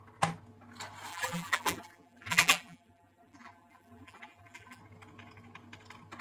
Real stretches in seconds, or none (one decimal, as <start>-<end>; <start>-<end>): 0.0-1.1; 4.8-6.2